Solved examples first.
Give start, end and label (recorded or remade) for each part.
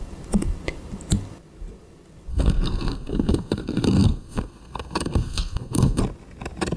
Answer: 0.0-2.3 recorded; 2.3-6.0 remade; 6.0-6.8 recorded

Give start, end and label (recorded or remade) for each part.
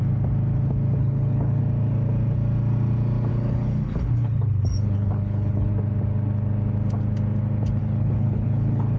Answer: 0.0-1.0 recorded; 1.0-1.6 remade; 1.6-3.3 recorded; 3.3-5.7 remade; 5.7-7.8 recorded; 7.8-9.0 remade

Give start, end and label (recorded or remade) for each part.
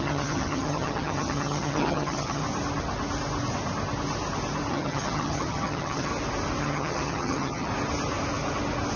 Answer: 0.0-2.4 remade; 2.4-4.7 recorded; 4.7-6.1 remade; 6.1-6.6 recorded; 6.6-7.7 remade; 7.7-9.0 recorded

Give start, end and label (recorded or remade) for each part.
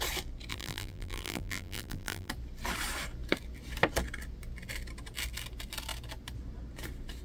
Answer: 0.0-0.5 recorded; 0.5-2.3 remade; 2.3-7.2 recorded